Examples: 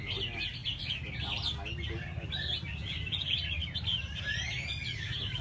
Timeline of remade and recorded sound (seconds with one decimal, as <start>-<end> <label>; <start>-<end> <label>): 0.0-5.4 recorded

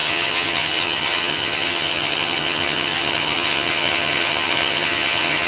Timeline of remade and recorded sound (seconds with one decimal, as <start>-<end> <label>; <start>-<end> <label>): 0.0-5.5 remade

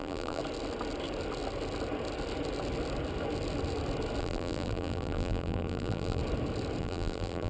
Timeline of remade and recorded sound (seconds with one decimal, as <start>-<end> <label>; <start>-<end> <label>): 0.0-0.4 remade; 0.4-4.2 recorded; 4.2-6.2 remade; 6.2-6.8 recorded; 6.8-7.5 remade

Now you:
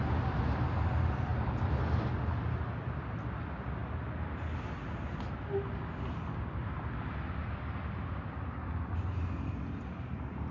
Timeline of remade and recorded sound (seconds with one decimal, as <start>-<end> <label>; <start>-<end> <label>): 0.0-10.5 recorded